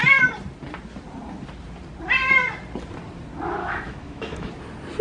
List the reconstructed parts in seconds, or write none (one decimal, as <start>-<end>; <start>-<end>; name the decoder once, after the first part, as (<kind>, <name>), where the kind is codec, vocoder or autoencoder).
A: 3.6-4.5 (autoencoder, DAC-VAE)